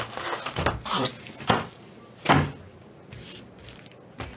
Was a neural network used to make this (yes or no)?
no